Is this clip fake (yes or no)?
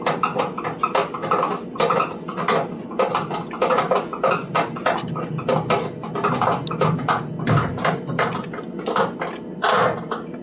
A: no